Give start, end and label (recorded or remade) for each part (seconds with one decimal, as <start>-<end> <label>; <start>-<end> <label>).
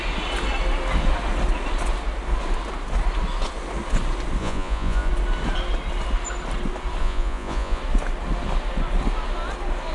0.0-4.4 recorded; 4.4-5.1 remade; 5.1-7.0 recorded; 7.0-7.8 remade; 7.8-9.9 recorded